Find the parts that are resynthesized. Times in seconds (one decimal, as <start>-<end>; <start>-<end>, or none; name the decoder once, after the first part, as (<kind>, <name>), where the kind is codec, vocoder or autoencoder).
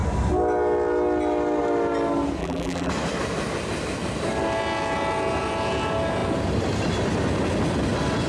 2.4-2.9 (vocoder, BigVGAN v2)